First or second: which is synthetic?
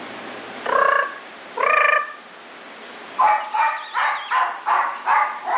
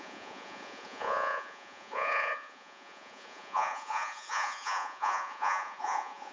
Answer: second